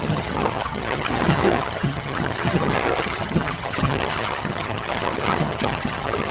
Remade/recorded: remade